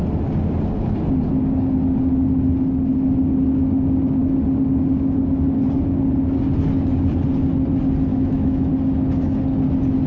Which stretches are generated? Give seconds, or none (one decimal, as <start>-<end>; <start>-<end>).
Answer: 8.1-8.7